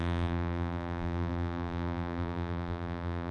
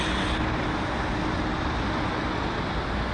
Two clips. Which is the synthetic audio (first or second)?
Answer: first